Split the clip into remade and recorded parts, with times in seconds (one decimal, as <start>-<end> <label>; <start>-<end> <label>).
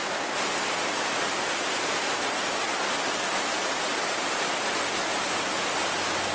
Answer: 0.0-6.3 recorded